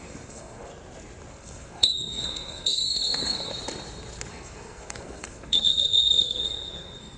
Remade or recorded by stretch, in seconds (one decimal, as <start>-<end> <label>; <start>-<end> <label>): 0.0-0.7 remade; 0.7-1.3 recorded; 1.3-3.5 remade; 3.5-4.3 recorded; 4.3-7.2 remade